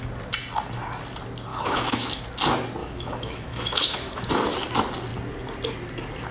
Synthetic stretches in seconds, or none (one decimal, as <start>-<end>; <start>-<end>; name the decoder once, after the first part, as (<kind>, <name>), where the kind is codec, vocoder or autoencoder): 1.5-2.2 (autoencoder, DAC-VAE); 2.8-4.3